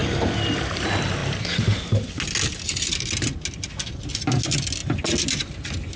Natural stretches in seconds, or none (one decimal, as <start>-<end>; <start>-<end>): 0.0-6.0